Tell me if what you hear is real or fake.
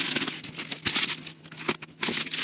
real